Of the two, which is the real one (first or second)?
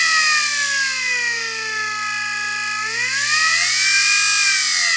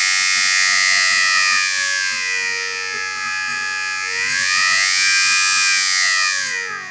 first